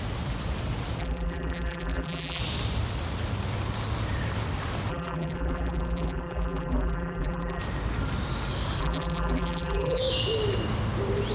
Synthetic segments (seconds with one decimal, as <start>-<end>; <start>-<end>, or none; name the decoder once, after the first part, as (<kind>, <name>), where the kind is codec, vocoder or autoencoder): 1.0-2.4 (vocoder, BigVGAN v2); 4.9-7.6; 8.8-10.0